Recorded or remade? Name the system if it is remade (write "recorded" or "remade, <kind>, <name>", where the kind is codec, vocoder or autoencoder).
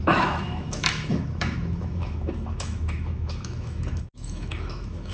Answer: remade, autoencoder, DAC-VAE